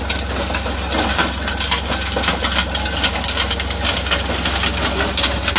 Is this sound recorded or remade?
recorded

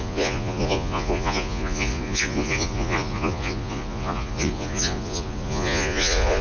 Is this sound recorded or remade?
remade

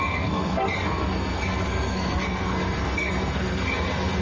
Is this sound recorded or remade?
remade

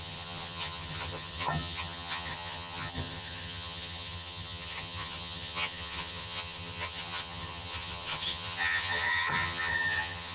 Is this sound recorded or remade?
remade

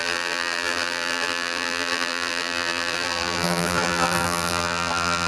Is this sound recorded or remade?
remade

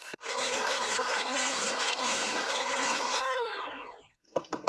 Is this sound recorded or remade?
remade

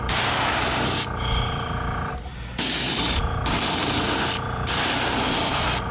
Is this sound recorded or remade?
remade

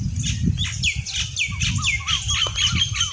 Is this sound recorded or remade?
recorded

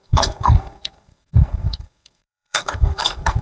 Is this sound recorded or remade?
remade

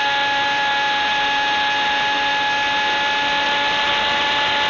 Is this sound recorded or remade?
recorded